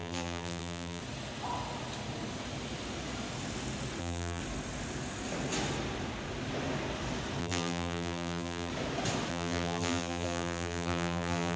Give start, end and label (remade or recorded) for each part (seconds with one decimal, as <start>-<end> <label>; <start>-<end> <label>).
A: 0.0-1.0 remade; 1.0-4.0 recorded; 4.0-4.4 remade; 4.4-7.4 recorded; 7.4-8.7 remade; 8.7-9.3 recorded; 9.3-11.6 remade